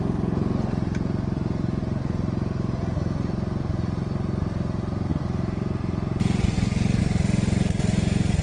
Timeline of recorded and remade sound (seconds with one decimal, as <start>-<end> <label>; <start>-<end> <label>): 0.0-8.4 recorded